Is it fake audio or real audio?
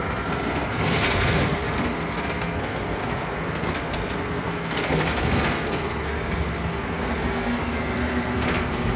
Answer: fake